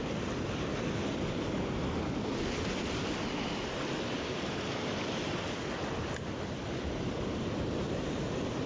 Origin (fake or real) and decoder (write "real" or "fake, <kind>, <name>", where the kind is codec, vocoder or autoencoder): real